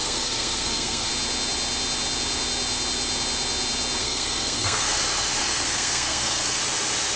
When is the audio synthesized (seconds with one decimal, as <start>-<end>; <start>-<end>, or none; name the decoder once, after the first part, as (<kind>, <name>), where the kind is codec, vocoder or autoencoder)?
0.0-1.1 (codec, SNAC); 4.0-5.0; 5.4-6.6